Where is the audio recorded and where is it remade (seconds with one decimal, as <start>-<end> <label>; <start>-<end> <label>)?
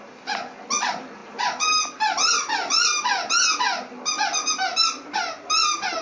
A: 0.0-6.0 recorded